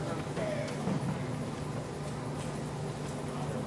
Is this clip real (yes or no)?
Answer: yes